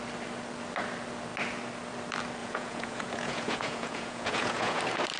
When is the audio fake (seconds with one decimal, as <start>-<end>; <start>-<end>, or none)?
2.4-4.8